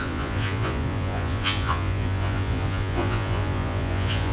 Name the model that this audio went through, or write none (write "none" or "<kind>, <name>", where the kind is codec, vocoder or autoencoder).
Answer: vocoder, Vocos